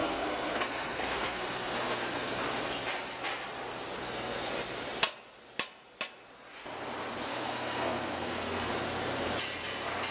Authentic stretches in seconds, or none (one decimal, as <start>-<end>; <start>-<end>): 2.3-4.0; 4.5-7.3; 8.7-10.1